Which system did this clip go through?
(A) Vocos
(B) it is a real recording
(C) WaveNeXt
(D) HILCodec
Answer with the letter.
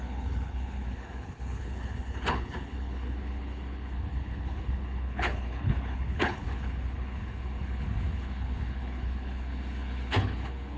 D